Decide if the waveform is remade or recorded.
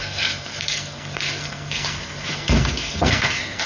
remade